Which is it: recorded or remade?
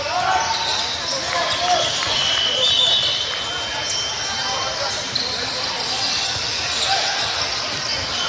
recorded